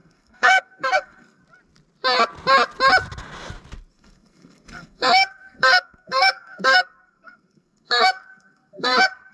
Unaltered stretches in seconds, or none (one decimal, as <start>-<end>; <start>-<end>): 1.4-3.9